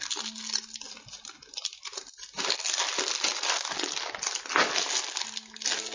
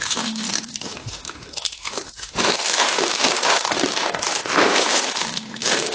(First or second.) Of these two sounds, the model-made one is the second